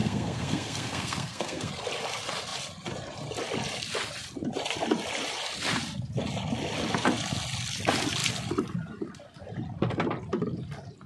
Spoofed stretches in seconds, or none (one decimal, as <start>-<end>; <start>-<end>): 0.0-1.7